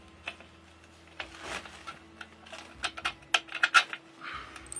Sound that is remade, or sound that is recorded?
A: recorded